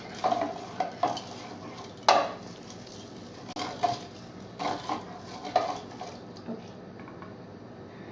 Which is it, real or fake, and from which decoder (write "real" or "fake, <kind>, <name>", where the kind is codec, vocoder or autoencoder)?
real